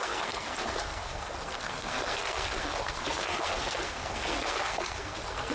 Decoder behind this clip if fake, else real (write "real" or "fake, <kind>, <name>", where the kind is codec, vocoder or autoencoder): fake, codec, SNAC